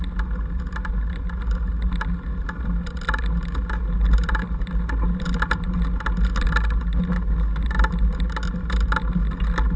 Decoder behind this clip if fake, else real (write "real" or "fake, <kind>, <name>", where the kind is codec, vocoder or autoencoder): real